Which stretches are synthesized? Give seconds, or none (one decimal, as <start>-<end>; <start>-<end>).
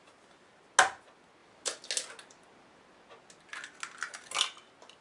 none